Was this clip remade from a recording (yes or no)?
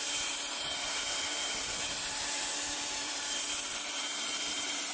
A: yes